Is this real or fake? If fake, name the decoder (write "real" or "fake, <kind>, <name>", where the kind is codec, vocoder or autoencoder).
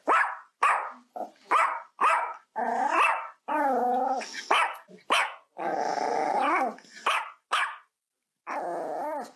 real